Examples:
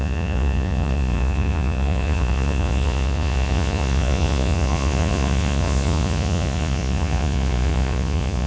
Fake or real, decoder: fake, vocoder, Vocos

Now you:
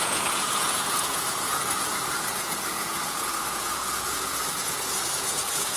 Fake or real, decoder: fake, vocoder, Vocos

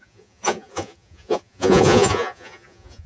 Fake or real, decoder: fake, vocoder, Vocos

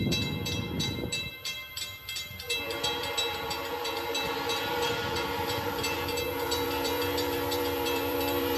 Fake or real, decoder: fake, vocoder, BigVGAN v2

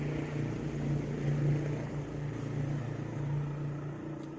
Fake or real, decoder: real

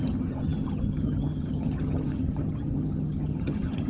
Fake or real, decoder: fake, vocoder, HiFi-GAN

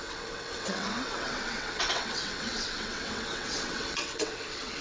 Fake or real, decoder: fake, vocoder, WaveNeXt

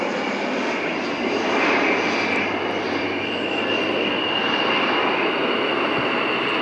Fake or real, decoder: real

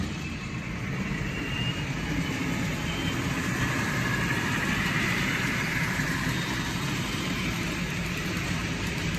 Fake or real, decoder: fake, vocoder, BigVGAN v2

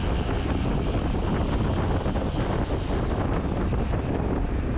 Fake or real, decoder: real